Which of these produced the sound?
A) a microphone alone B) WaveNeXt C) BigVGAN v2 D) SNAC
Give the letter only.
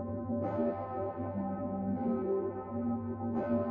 C